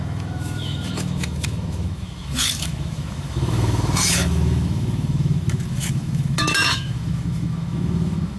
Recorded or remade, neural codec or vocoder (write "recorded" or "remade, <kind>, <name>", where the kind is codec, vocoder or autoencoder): remade, autoencoder, DAC-VAE